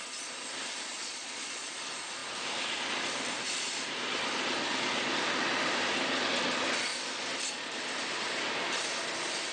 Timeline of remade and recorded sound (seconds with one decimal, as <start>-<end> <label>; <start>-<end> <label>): 0.0-0.9 recorded; 0.9-1.7 remade; 1.7-9.5 recorded